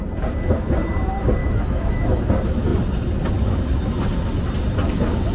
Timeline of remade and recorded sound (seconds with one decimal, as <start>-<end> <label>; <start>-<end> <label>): 0.0-1.4 recorded; 1.4-2.3 remade; 2.3-5.3 recorded